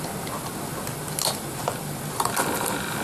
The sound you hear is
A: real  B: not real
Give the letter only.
A